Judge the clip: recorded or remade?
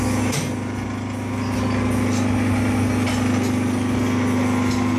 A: recorded